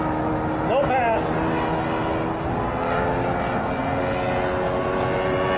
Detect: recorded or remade recorded